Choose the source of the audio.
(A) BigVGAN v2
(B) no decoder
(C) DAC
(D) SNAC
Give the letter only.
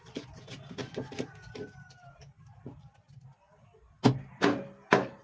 B